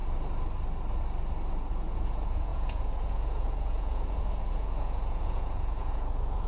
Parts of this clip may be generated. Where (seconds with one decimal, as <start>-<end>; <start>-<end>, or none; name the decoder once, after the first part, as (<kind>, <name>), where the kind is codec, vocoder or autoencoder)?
1.7-6.5 (vocoder, Vocos)